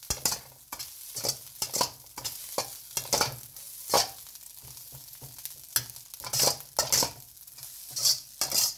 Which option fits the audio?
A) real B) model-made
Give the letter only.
A